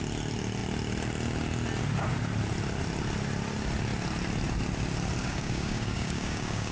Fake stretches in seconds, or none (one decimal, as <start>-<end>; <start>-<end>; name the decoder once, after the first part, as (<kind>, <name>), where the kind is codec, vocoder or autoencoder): 5.2-6.7 (codec, DAC)